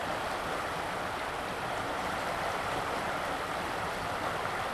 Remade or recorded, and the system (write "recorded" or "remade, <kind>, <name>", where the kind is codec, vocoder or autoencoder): recorded